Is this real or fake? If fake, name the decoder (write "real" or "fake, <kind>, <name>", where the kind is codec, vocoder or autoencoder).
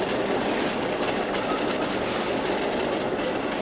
real